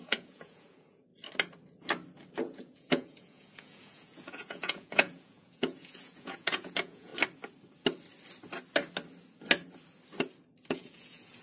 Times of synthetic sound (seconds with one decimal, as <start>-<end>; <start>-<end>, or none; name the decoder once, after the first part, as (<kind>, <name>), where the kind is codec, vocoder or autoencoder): 0.0-1.1 (vocoder, Vocos); 2.4-7.1; 10.7-11.4

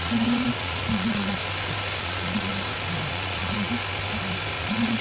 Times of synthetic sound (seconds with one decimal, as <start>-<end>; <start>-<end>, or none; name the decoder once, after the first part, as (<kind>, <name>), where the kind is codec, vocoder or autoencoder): 0.0-1.4 (vocoder, Vocos); 2.0-2.5; 3.1-3.7; 4.6-5.0

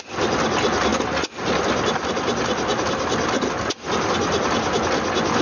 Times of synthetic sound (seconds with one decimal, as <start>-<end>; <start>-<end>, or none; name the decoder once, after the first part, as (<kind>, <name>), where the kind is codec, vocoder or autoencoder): none

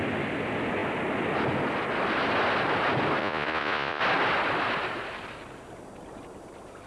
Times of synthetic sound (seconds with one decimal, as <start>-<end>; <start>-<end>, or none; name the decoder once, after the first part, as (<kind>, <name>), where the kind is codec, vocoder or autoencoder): 3.2-4.0 (vocoder, Vocos)